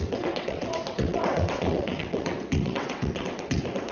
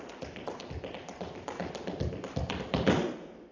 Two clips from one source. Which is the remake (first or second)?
first